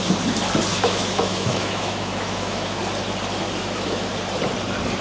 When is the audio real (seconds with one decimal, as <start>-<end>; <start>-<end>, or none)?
0.0-0.7; 2.8-3.6; 4.1-5.0